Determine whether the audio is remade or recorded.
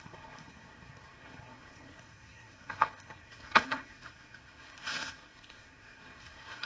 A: remade